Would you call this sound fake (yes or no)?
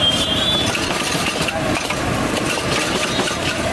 yes